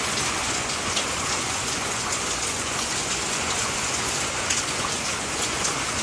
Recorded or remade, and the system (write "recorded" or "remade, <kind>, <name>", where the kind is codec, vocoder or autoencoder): remade, vocoder, Vocos